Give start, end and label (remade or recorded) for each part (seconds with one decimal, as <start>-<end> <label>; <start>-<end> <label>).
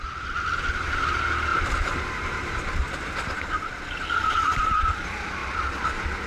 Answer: 0.0-1.5 recorded; 1.5-4.6 remade; 4.6-6.3 recorded